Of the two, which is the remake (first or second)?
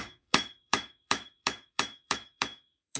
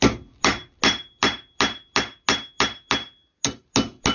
first